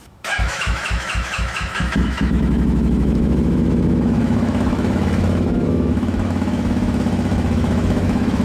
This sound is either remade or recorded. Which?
remade